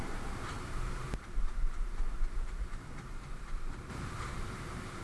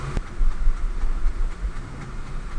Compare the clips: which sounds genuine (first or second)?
second